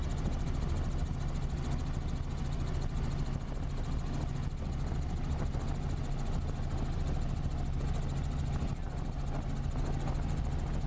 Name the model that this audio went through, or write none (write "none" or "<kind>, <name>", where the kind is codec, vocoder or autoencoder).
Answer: none